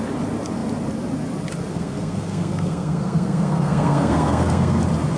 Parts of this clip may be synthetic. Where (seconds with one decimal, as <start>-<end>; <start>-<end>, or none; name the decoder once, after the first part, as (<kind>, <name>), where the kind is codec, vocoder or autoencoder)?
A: 1.7-4.8 (codec, SNAC)